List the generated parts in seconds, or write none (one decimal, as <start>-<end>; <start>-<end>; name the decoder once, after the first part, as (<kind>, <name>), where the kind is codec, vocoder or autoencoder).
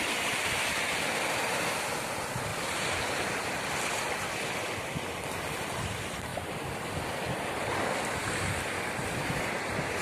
2.5-3.6 (vocoder, BigVGAN v2); 6.3-8.0